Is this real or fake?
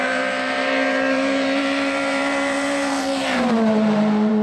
fake